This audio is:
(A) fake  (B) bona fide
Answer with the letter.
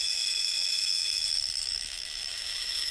A